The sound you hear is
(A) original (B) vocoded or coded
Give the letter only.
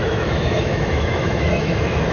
B